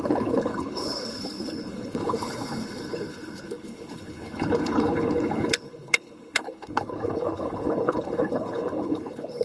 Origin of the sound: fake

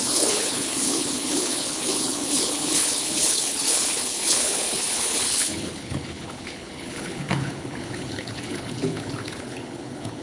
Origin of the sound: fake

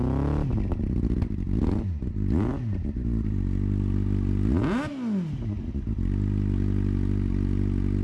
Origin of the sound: real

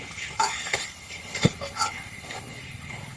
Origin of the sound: fake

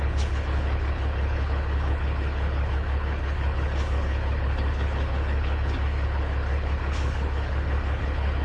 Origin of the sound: fake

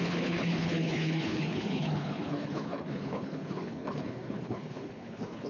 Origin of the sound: fake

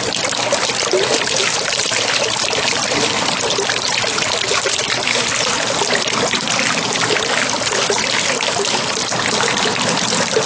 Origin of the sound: real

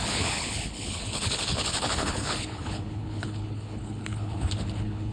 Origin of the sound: fake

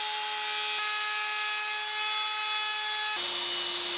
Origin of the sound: real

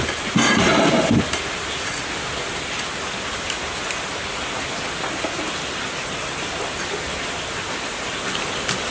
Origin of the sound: real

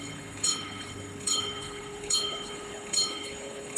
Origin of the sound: fake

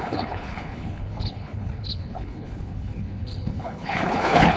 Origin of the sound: fake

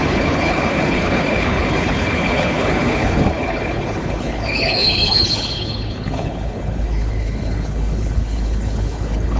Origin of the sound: fake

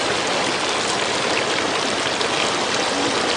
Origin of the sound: real